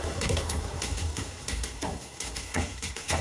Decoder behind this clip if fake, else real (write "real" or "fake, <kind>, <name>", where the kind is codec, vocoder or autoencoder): fake, codec, SNAC